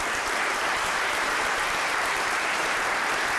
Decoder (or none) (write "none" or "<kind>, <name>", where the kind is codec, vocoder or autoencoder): vocoder, BigVGAN v2